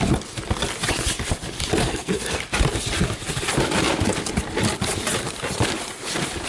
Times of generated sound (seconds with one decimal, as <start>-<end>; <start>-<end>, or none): 1.8-2.4